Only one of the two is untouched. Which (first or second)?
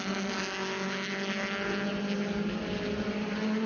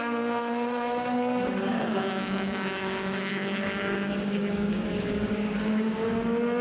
first